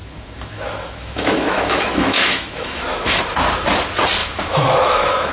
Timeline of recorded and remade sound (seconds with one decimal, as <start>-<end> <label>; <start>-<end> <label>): 0.0-3.2 remade; 3.2-4.2 recorded; 4.2-5.3 remade